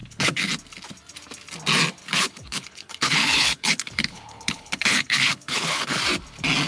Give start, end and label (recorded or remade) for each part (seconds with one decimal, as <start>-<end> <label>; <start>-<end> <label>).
0.0-0.5 remade; 0.5-2.0 recorded; 2.0-6.0 remade; 6.0-6.7 recorded